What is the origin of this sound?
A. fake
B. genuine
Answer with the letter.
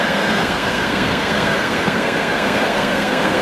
A